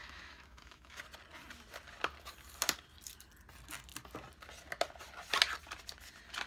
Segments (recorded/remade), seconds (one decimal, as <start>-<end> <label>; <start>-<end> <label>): 0.0-1.0 remade; 1.0-6.5 recorded